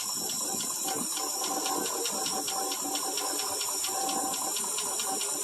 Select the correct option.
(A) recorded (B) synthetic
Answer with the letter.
A